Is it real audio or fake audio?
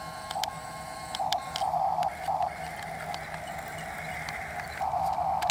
real